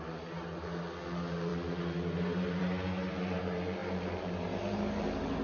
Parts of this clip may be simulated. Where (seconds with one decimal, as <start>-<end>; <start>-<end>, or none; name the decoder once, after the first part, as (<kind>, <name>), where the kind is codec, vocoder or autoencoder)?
none